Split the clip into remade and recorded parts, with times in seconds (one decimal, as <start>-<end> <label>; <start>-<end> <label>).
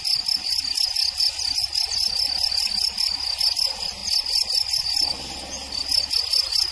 0.0-6.7 recorded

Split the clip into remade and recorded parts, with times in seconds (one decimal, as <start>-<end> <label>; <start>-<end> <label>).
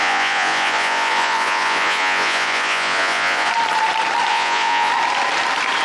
0.0-3.5 remade; 3.5-4.3 recorded; 4.3-4.9 remade; 4.9-5.8 recorded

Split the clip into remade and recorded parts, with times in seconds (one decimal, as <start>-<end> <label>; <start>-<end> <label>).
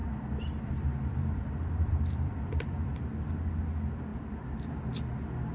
0.0-3.3 remade; 3.3-4.1 recorded; 4.1-4.7 remade; 4.7-5.5 recorded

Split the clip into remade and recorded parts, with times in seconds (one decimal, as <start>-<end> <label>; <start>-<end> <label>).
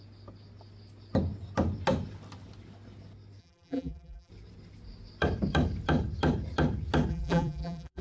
0.0-3.4 recorded; 3.4-4.3 remade; 4.3-7.1 recorded; 7.1-8.0 remade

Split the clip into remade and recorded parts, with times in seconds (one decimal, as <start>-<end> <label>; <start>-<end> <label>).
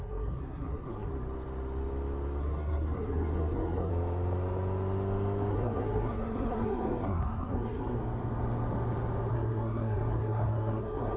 0.0-1.1 remade; 1.1-2.4 recorded; 2.4-3.9 remade; 3.9-5.5 recorded; 5.5-8.0 remade; 8.0-9.3 recorded; 9.3-11.2 remade